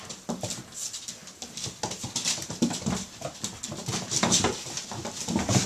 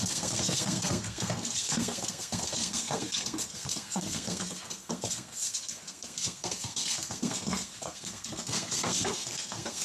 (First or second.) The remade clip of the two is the second